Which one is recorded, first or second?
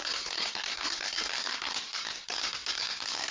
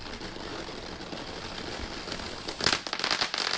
second